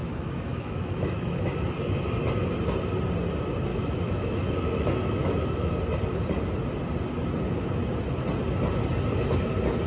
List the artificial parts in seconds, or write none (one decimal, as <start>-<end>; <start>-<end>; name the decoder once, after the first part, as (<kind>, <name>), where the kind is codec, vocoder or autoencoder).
0.0-1.4 (autoencoder, DAC-VAE); 3.7-5.7